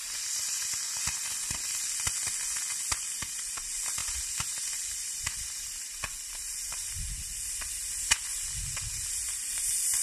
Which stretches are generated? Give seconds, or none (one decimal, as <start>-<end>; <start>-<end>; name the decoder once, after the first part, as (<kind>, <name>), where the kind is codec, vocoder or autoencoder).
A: none